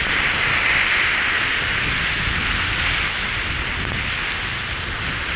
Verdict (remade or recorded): recorded